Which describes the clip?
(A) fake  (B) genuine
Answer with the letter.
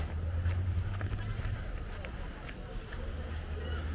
B